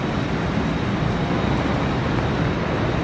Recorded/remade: recorded